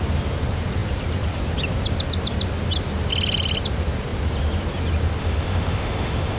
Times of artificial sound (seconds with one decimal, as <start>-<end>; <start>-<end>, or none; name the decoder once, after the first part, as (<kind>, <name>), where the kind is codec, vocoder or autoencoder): 5.2-6.4 (autoencoder, DAC-VAE)